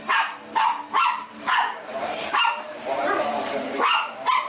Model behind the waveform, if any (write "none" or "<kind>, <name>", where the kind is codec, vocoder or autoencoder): vocoder, BigVGAN v2